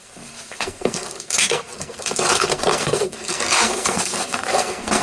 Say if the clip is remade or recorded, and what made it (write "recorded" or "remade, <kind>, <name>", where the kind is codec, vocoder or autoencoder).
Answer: remade, codec, SNAC